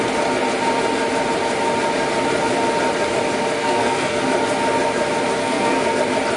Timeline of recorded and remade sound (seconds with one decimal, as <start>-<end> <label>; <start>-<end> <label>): 0.0-3.6 recorded; 3.6-4.2 remade; 4.2-5.4 recorded; 5.4-6.0 remade; 6.0-6.4 recorded

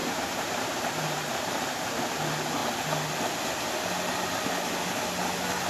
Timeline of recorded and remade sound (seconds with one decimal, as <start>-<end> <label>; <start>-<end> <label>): 0.0-2.0 remade; 2.0-5.7 recorded

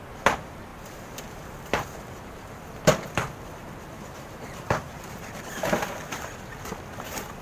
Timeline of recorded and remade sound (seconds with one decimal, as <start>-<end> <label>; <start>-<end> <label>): 0.0-0.7 recorded; 0.7-2.6 remade; 2.6-3.6 recorded; 3.6-5.6 remade; 5.6-7.4 recorded